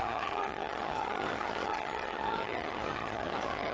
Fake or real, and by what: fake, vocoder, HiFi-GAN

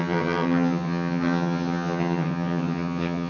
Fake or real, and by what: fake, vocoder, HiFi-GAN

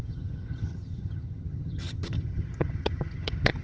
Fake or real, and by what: fake, vocoder, HiFi-GAN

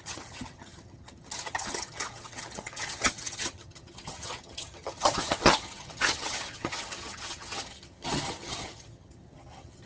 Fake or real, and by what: fake, vocoder, HiFi-GAN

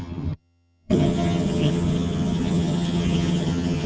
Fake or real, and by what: fake, vocoder, HiFi-GAN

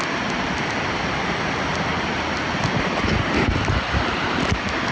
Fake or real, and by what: real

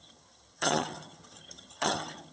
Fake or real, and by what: fake, vocoder, HiFi-GAN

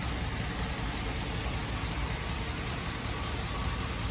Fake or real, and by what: real